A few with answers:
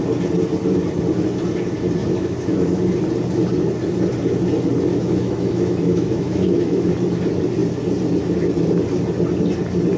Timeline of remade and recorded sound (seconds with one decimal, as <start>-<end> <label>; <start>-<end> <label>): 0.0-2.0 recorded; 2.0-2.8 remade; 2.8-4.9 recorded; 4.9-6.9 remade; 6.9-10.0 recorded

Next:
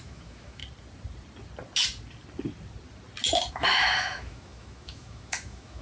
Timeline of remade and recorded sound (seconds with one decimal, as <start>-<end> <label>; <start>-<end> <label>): 0.0-0.6 remade; 0.6-3.5 recorded; 3.5-5.8 remade

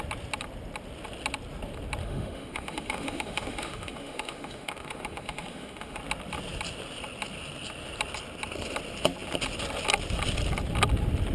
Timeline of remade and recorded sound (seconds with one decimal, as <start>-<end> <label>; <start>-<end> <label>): 0.0-2.0 recorded; 2.0-6.0 remade; 6.0-11.3 recorded